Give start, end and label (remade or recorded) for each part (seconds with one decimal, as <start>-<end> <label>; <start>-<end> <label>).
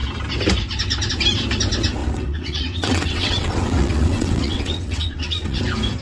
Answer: 0.0-2.0 recorded; 2.0-5.6 remade; 5.6-6.0 recorded